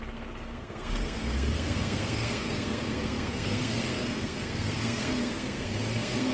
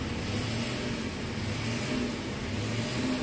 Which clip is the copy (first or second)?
first